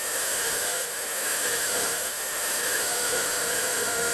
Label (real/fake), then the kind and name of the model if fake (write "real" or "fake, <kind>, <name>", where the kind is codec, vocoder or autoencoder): fake, autoencoder, DAC-VAE